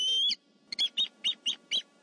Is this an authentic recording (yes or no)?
yes